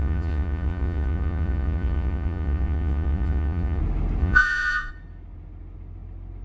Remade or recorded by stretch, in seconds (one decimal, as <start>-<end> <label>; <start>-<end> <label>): 0.0-3.8 remade; 3.8-4.2 recorded; 4.2-4.9 remade; 4.9-6.4 recorded